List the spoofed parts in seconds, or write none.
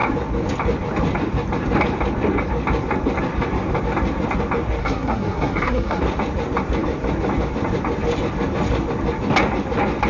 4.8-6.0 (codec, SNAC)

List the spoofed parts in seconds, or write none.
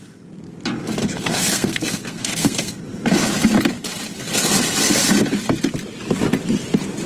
1.0-2.8 (codec, SNAC)